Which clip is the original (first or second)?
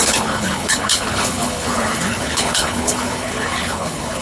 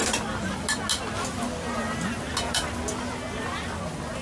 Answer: second